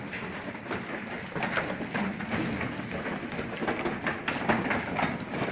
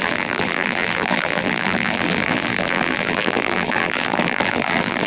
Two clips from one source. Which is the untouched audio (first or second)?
first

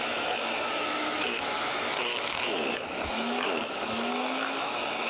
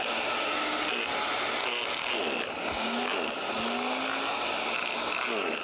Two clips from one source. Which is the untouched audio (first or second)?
second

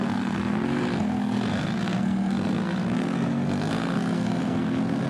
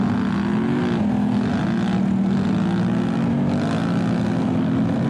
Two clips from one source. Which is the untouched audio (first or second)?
second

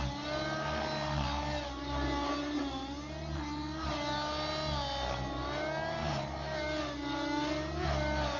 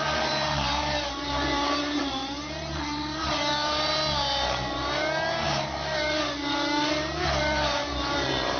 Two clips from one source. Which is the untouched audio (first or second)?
first